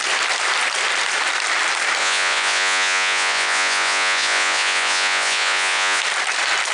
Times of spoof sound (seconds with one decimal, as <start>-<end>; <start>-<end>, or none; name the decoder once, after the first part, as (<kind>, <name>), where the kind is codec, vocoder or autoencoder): 2.0-6.0 (vocoder, Vocos)

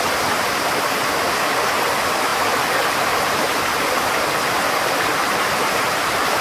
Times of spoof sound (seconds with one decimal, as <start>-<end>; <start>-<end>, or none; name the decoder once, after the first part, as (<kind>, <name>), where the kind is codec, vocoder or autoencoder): none

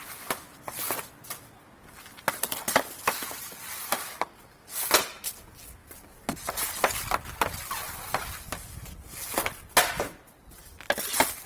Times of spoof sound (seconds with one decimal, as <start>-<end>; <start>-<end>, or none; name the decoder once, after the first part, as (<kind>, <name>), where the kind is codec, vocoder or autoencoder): none

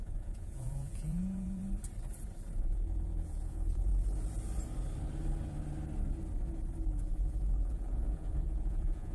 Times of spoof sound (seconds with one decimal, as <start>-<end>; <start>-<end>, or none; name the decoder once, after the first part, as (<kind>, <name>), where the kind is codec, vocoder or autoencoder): 0.0-1.6 (vocoder, Vocos); 2.6-3.9; 7.0-9.1